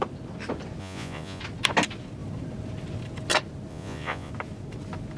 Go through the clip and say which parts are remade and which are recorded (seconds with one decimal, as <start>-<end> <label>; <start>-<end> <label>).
0.0-0.8 recorded; 0.8-1.4 remade; 1.4-3.7 recorded; 3.7-4.3 remade; 4.3-5.2 recorded